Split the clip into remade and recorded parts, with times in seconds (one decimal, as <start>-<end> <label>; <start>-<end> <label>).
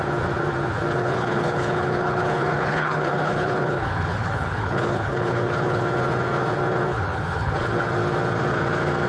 0.0-1.0 recorded; 1.0-5.8 remade; 5.8-6.9 recorded; 6.9-7.5 remade; 7.5-9.1 recorded